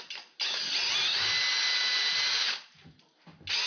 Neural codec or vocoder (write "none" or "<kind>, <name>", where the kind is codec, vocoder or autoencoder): none